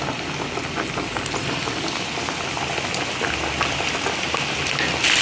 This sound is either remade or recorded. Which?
recorded